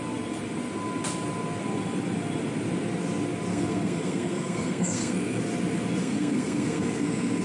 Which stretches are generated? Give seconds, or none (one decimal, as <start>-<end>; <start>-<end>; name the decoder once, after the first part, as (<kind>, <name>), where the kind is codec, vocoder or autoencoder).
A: 3.5-5.4 (codec, SNAC); 6.0-7.4